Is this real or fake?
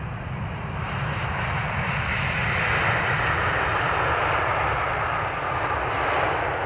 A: real